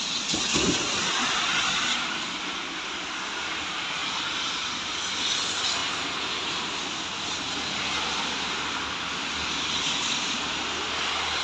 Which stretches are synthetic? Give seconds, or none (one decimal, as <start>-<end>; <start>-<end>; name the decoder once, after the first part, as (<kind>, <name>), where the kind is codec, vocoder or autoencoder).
4.0-5.0 (vocoder, BigVGAN v2)